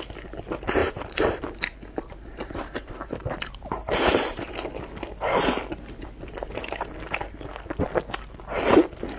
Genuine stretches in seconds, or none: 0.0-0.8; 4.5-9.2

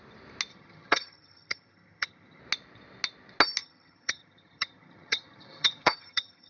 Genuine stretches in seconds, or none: 0.0-0.5; 2.4-3.6

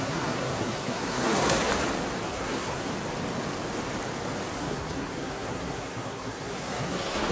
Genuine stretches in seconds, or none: 1.7-2.3; 2.9-4.6

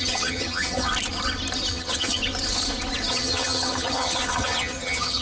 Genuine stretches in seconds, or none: 0.9-1.7; 2.2-3.1

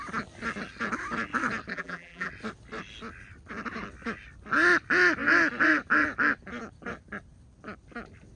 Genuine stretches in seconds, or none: 0.0-1.7; 2.3-8.4

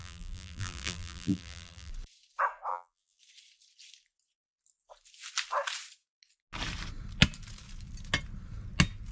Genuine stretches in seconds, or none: 1.9-2.7; 3.2-9.1